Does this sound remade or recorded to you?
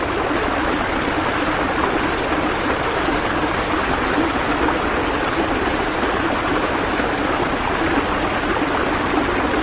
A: recorded